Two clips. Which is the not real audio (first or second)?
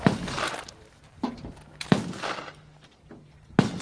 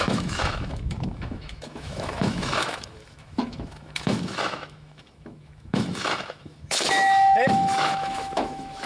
second